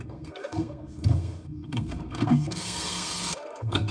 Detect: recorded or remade remade